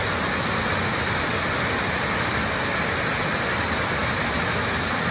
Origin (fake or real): real